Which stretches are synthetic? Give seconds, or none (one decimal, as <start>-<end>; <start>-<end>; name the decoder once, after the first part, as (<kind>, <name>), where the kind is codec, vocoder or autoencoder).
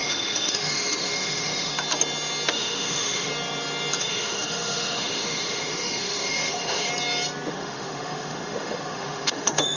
0.0-1.7 (autoencoder, DAC-VAE); 2.5-3.3; 4.0-6.9; 7.5-9.8